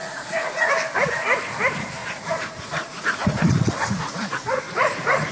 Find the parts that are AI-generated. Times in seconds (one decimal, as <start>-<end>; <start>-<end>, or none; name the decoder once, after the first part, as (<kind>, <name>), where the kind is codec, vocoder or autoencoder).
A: 0.0-0.7 (vocoder, Vocos); 2.0-5.3